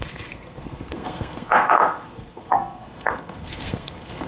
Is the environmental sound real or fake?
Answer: fake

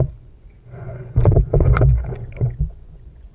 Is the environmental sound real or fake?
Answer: fake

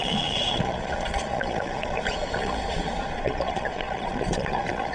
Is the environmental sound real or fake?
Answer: fake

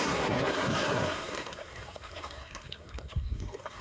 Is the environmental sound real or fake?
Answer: fake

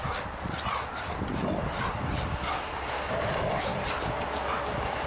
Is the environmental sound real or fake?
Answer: real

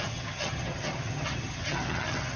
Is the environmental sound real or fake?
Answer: fake